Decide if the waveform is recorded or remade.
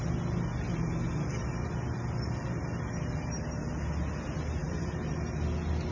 recorded